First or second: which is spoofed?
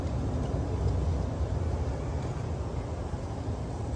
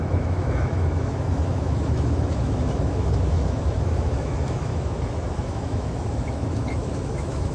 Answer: second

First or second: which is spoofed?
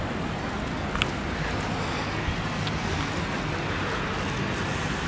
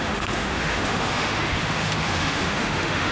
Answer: second